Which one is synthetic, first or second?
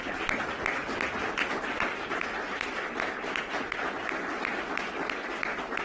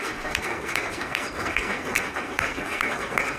second